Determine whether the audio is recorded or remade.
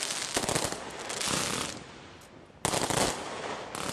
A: recorded